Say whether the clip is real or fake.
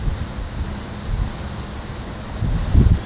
real